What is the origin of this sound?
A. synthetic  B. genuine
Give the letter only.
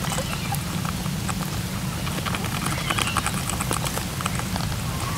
B